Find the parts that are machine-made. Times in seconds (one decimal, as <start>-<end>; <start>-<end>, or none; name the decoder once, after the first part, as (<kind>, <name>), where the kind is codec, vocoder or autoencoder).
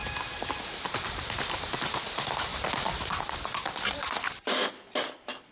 0.0-2.0 (vocoder, BigVGAN v2)